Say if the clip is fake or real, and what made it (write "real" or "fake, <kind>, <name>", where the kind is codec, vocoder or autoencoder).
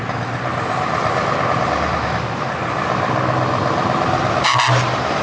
real